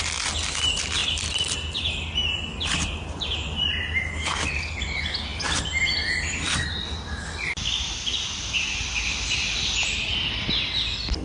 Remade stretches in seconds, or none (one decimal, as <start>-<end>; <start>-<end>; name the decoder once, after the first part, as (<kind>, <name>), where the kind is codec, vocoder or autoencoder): none